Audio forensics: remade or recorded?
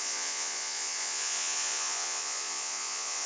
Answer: remade